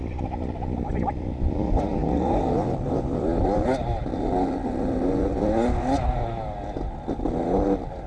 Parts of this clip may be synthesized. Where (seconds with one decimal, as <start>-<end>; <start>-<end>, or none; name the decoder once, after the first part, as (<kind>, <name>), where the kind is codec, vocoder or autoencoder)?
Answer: none